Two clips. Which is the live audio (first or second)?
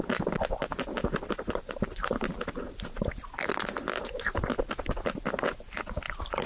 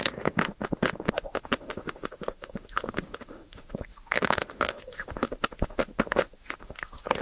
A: first